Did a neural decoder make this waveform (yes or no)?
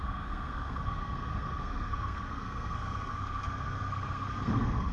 yes